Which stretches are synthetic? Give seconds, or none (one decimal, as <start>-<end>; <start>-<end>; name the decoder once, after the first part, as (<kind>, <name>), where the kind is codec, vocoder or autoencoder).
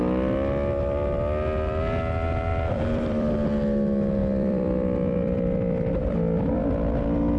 2.5-3.3 (vocoder, BigVGAN v2); 4.2-6.6